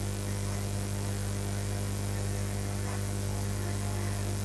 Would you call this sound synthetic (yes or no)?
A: no